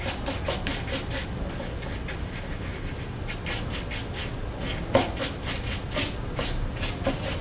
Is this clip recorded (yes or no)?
yes